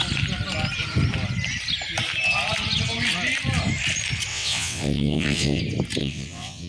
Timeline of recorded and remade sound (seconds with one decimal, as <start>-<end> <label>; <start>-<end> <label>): 0.0-4.3 recorded; 4.3-5.6 remade; 5.6-6.0 recorded; 6.0-6.7 remade